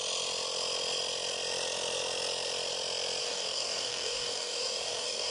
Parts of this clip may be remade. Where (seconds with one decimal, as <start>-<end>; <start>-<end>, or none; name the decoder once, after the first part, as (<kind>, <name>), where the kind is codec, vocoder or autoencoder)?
3.2-5.3 (codec, DAC)

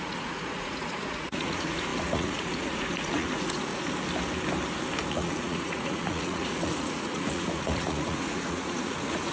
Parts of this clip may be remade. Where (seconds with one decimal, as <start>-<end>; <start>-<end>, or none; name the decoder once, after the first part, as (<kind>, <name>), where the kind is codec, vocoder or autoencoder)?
0.0-3.7 (vocoder, Vocos); 5.1-9.3

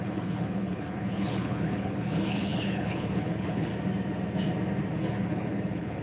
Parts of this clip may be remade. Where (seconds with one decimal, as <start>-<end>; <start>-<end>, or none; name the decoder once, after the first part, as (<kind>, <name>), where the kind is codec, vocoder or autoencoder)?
0.0-3.7 (codec, HILCodec); 4.9-6.0

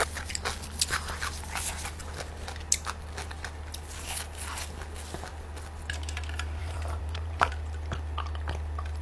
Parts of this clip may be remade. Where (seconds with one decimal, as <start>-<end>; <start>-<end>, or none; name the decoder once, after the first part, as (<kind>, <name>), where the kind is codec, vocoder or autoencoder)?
6.6-7.5 (vocoder, BigVGAN v2)